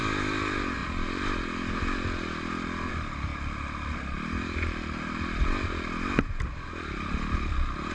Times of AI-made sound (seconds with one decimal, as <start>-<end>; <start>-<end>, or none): 0.0-7.9